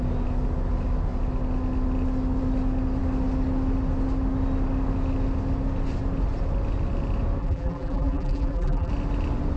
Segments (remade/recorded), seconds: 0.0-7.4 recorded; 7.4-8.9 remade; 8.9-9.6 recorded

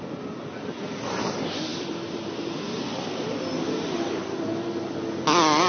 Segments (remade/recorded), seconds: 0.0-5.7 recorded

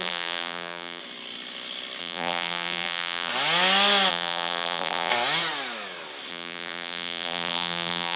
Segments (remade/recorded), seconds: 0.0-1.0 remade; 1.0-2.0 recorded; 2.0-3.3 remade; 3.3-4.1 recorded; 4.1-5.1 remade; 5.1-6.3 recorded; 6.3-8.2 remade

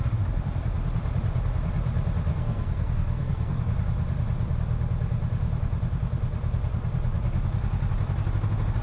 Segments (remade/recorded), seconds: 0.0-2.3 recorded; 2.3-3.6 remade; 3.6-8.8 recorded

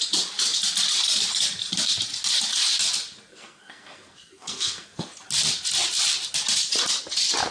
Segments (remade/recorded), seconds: 0.0-3.3 recorded; 3.3-5.1 remade; 5.1-7.5 recorded